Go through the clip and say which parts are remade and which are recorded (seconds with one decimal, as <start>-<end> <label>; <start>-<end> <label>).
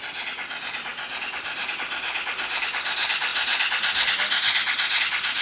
0.0-5.4 recorded